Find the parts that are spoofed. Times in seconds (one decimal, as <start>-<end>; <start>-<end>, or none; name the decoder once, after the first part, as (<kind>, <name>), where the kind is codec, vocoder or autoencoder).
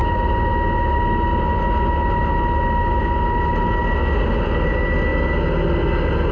none